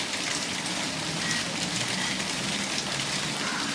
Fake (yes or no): no